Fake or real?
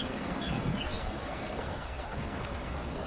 fake